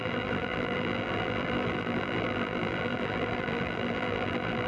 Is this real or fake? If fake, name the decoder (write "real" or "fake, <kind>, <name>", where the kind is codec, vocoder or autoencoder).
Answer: fake, vocoder, BigVGAN v2